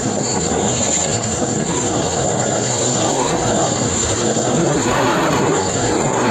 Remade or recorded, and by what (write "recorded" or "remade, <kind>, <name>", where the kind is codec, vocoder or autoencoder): remade, codec, SNAC